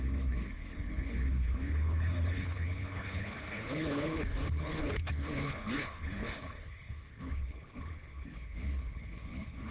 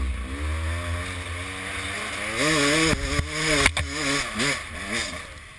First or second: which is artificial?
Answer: first